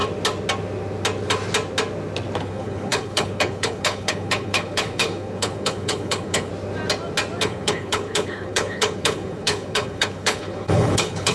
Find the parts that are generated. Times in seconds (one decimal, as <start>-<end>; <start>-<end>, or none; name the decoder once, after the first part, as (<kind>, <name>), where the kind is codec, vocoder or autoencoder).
2.4-6.5 (codec, HILCodec); 7.4-11.3